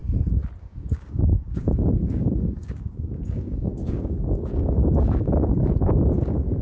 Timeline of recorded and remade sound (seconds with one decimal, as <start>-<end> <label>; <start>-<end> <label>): 0.0-0.6 recorded; 0.6-6.6 remade